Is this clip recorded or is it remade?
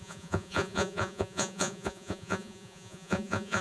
remade